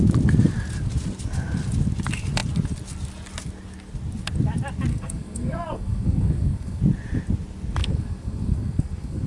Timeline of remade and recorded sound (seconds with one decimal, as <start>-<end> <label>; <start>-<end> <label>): 0.0-4.9 recorded; 4.9-6.8 remade; 6.8-7.8 recorded; 7.8-9.3 remade